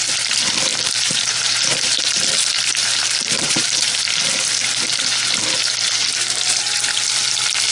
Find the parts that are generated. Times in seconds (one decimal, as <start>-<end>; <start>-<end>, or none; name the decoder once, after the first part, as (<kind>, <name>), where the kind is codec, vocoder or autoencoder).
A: 0.7-2.3 (vocoder, BigVGAN v2); 2.8-3.9